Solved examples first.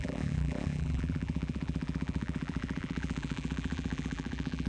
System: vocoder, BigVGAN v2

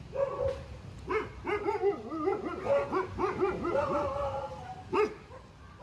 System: none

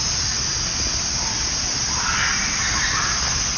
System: none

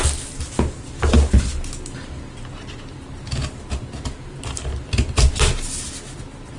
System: none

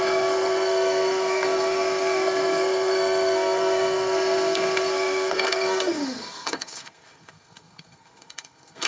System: codec, SNAC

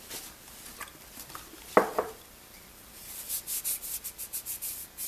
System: none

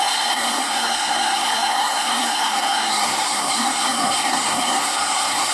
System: codec, SNAC